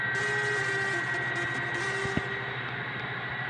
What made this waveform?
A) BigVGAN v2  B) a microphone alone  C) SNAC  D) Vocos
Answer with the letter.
B